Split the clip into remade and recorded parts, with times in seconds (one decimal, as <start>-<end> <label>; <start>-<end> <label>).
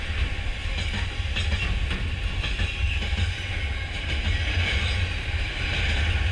0.0-6.3 recorded